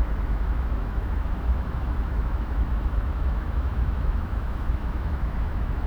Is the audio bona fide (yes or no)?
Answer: no